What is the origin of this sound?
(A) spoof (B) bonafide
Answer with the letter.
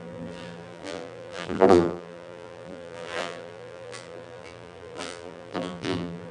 A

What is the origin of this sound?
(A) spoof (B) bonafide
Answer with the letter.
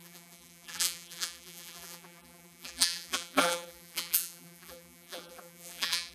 A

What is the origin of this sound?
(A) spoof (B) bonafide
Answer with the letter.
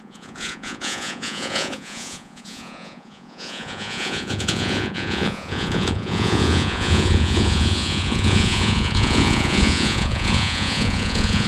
A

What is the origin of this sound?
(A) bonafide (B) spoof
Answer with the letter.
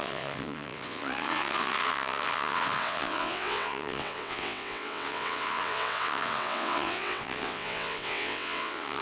B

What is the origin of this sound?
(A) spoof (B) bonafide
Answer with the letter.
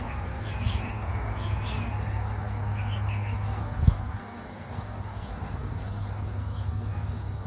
A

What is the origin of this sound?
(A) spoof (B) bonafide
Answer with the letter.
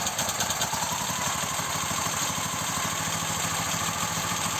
A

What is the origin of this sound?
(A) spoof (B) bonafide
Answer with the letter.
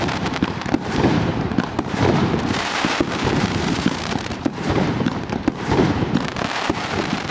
A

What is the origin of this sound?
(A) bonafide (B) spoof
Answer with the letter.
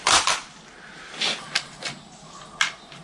A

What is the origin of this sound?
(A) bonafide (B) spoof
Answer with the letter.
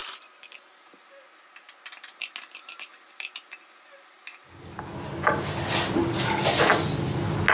A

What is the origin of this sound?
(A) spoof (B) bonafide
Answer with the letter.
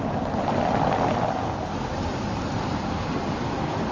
B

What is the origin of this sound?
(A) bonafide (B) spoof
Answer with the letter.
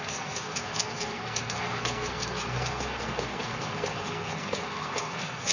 B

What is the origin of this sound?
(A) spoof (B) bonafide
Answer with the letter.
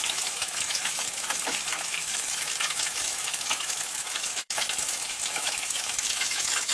A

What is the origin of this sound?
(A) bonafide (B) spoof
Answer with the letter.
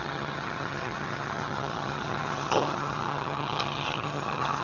B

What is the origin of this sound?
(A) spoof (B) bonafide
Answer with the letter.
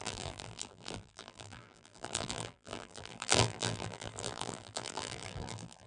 A